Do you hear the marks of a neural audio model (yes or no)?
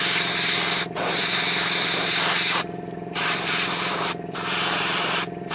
yes